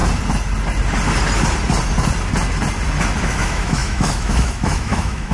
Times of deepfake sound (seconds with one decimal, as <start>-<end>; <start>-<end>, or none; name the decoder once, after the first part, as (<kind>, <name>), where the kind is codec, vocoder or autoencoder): 3.2-5.3 (autoencoder, DAC-VAE)